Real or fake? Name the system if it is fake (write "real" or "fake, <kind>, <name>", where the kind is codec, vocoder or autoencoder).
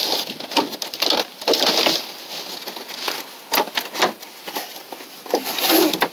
real